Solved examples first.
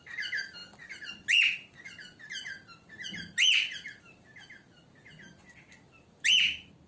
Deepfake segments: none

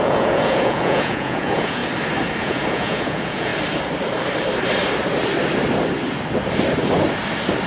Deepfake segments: 0.0-1.8 (vocoder, Vocos); 2.4-3.5

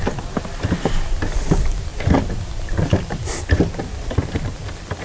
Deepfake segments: 1.9-5.0 (vocoder, BigVGAN v2)

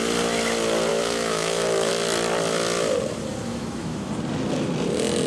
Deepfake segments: 0.9-1.9 (autoencoder, DAC-VAE); 3.5-4.1

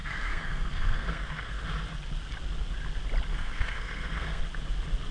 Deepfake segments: 0.0-1.6 (codec, SNAC); 3.3-4.4